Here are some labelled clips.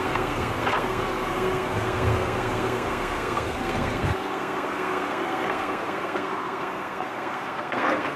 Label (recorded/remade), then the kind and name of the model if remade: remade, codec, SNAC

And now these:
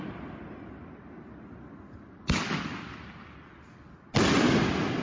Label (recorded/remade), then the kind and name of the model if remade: recorded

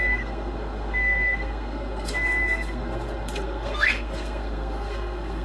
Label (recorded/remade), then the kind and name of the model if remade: remade, codec, SNAC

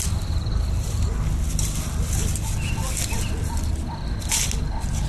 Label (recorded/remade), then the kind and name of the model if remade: recorded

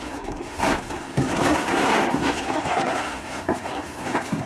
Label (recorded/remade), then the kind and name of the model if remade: remade, codec, SNAC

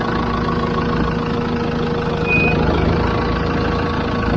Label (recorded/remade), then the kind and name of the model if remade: recorded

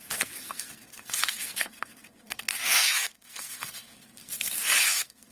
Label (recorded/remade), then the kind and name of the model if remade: remade, codec, SNAC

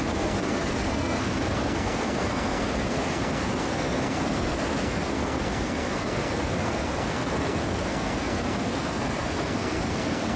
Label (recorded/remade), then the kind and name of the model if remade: remade, codec, SNAC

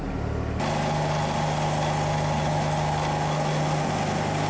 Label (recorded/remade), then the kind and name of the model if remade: recorded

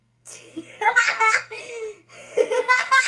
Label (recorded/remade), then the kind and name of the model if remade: remade, codec, SNAC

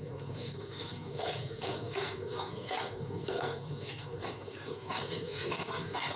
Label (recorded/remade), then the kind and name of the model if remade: remade, codec, SNAC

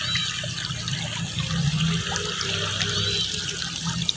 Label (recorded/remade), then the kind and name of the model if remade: recorded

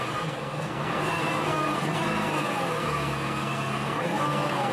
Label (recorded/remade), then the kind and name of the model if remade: remade, codec, SNAC